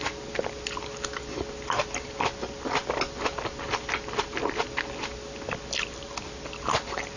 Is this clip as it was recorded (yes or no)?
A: yes